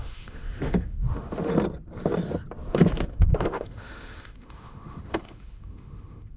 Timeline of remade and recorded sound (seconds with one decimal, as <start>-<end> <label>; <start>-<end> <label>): 0.0-1.5 remade; 1.5-2.7 recorded; 2.7-6.4 remade